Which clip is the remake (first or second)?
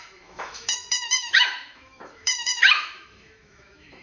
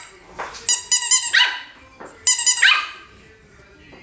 first